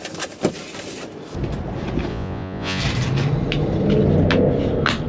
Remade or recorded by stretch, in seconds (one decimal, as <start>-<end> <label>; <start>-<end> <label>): 0.0-2.1 recorded; 2.1-2.8 remade; 2.8-5.1 recorded